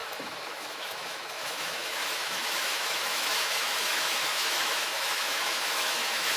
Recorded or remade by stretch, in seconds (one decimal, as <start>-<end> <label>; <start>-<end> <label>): 0.0-6.4 remade